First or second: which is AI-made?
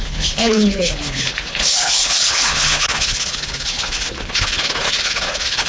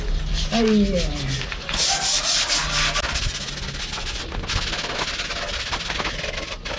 first